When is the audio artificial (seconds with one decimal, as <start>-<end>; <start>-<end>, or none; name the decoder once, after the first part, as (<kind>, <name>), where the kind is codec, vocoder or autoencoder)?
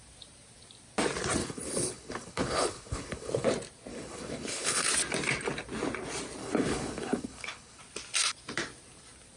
1.4-3.5 (codec, HILCodec); 3.9-4.9; 6.4-7.8